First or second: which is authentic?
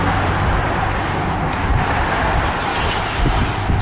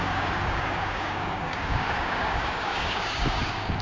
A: first